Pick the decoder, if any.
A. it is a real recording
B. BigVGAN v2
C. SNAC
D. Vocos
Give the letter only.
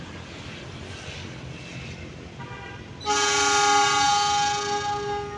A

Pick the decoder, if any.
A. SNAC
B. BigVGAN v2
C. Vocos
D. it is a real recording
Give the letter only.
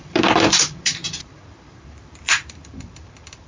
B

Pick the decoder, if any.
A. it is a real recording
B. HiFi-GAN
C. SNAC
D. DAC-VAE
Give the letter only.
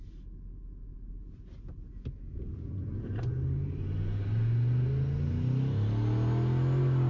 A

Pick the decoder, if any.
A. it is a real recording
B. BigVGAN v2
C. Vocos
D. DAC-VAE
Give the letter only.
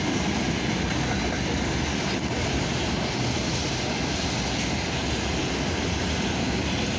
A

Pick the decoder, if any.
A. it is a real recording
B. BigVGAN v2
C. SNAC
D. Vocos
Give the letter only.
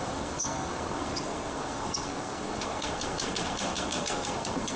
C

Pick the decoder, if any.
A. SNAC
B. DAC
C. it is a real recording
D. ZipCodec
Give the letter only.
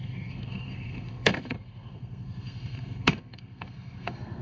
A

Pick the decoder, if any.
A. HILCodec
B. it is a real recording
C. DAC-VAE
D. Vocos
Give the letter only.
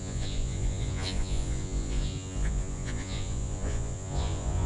D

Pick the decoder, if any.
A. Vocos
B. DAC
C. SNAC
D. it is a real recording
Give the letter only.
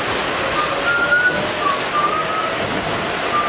D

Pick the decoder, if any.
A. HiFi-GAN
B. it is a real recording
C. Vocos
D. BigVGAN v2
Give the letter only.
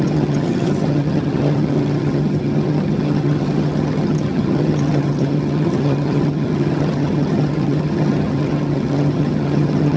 A